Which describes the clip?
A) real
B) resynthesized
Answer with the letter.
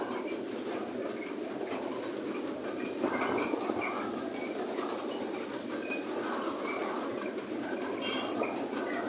A